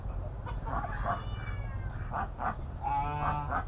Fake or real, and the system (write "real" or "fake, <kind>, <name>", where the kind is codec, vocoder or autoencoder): real